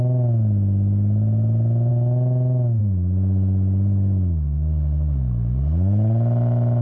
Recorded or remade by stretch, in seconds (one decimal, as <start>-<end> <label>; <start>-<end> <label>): 0.0-6.8 recorded